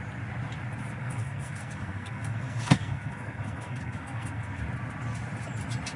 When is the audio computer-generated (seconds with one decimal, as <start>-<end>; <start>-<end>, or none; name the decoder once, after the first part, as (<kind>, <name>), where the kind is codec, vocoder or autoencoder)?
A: 1.0-4.6 (codec, SNAC)